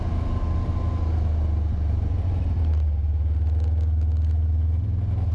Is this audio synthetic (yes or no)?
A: no